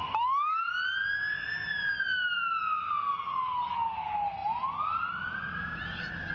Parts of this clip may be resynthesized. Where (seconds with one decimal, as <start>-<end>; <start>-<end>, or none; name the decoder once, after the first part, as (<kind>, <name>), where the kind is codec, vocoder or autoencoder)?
none